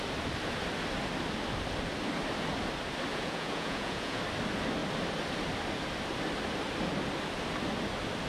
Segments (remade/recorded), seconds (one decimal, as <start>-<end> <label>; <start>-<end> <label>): 0.0-3.1 recorded; 3.1-4.2 remade; 4.2-8.3 recorded